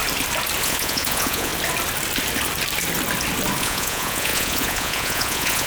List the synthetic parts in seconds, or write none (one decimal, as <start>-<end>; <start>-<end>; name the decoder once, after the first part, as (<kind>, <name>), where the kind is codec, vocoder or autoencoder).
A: 0.6-1.5 (vocoder, Vocos); 3.6-5.7